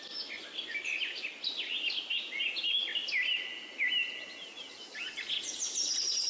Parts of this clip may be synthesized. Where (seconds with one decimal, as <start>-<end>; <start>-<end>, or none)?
none

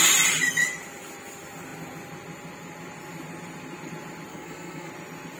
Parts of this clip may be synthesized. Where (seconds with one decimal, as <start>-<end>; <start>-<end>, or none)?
4.3-4.9

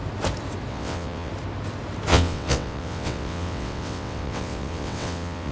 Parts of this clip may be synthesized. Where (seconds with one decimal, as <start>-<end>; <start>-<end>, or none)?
0.7-1.3; 2.1-5.5

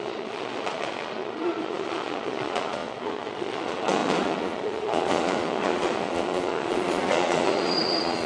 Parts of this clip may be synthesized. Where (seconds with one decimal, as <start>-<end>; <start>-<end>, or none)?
0.0-8.3

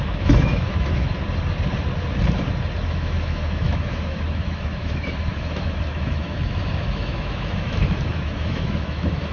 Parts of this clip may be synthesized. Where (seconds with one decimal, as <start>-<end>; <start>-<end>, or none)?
0.0-1.1; 2.8-9.3

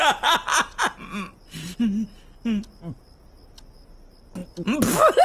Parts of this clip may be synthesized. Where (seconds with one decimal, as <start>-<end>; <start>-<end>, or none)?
none

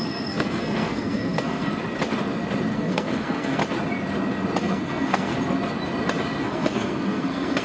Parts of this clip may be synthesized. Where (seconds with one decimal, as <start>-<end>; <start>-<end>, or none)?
0.0-1.7; 2.7-3.6; 4.6-5.3; 6.4-7.6